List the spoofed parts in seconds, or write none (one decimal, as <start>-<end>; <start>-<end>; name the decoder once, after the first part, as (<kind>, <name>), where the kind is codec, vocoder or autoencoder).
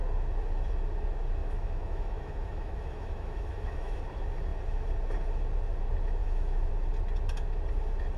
1.4-4.0 (autoencoder, DAC-VAE); 6.2-6.7